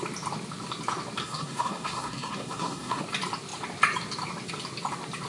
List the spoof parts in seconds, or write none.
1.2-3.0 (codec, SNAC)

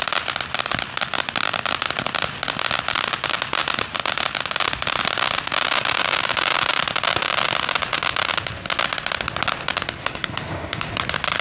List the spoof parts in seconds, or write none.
10.0-10.9 (autoencoder, DAC-VAE)

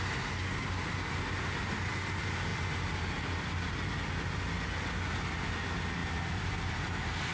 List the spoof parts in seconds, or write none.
6.0-6.7 (vocoder, BigVGAN v2)

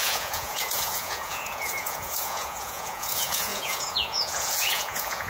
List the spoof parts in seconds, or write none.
0.0-5.3 (vocoder, Vocos)

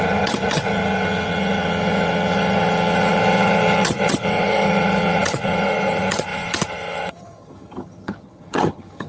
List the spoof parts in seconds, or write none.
0.0-9.1 (vocoder, HiFi-GAN)

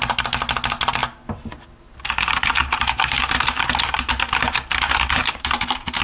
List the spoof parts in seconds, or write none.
2.6-3.4 (vocoder, BigVGAN v2); 5.2-6.0

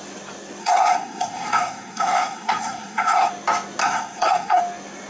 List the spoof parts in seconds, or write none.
0.6-3.3 (codec, SNAC); 3.8-4.6

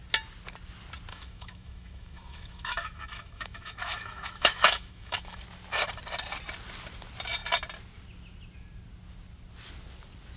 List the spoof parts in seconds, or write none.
1.1-5.4 (autoencoder, DAC-VAE)